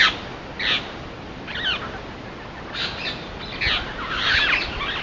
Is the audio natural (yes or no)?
yes